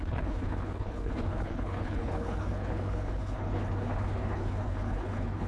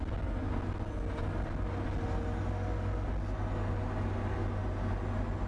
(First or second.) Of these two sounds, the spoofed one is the first